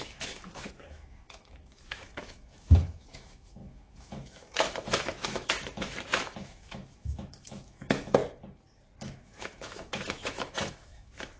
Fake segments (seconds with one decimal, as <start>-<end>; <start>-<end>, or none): 0.0-8.2; 9.0-11.4